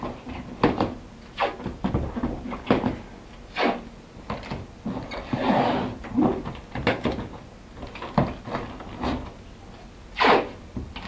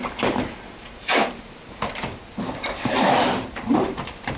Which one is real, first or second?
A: first